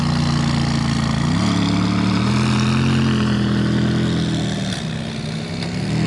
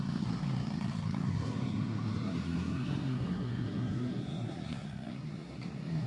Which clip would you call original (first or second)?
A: first